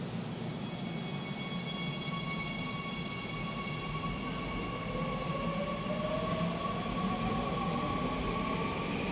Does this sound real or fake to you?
real